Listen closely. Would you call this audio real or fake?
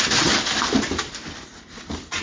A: real